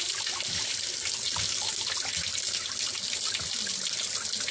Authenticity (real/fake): real